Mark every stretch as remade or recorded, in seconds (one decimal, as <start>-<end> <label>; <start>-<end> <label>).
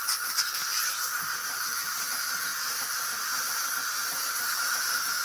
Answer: 0.0-5.2 remade